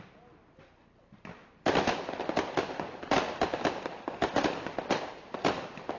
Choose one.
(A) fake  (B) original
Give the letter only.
B